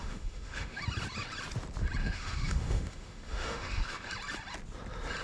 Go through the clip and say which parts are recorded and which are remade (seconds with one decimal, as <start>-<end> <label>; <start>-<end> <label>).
0.0-0.8 remade; 0.8-2.0 recorded; 2.0-4.1 remade; 4.1-5.2 recorded

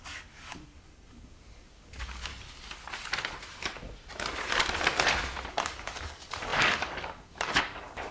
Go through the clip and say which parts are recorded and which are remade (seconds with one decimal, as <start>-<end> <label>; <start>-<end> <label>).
0.0-2.3 remade; 2.3-5.5 recorded; 5.5-8.1 remade

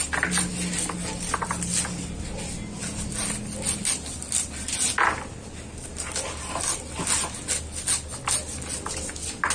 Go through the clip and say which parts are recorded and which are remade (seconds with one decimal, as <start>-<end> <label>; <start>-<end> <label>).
0.0-9.5 recorded

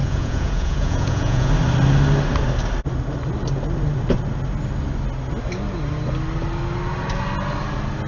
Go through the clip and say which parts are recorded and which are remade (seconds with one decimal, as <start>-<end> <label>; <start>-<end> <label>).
0.0-1.5 remade; 1.5-8.1 recorded